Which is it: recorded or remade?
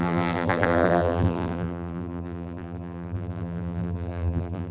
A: remade